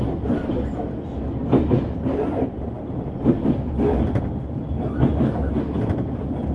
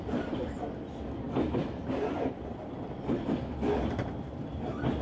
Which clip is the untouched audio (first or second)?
first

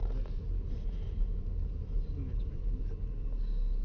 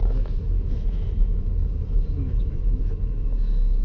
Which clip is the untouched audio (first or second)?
first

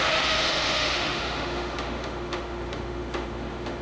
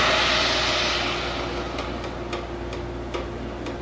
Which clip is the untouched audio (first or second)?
second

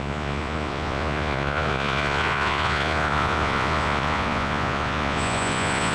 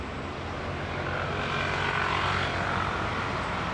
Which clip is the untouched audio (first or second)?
second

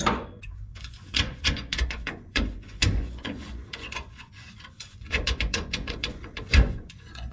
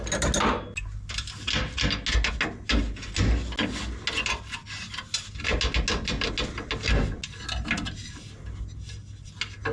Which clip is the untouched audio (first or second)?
second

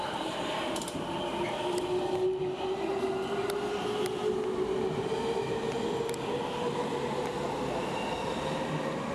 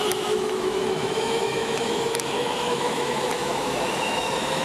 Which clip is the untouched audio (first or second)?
first